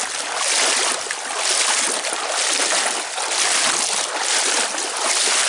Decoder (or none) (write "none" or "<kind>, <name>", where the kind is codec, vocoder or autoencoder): none